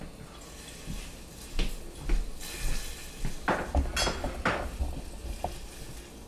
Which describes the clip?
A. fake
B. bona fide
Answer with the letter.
B